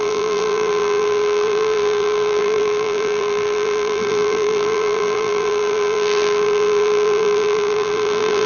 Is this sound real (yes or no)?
no